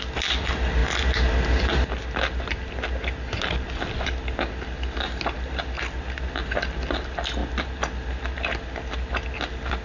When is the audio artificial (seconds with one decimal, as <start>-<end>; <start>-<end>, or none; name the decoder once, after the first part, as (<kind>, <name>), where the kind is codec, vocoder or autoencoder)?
none